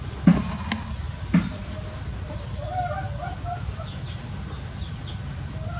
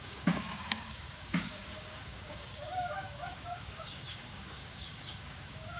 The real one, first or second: first